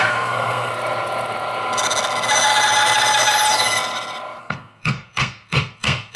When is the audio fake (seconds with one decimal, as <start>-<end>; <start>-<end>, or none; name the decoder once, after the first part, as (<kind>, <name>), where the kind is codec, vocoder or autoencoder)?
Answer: 0.0-0.7 (codec, SNAC); 4.4-6.2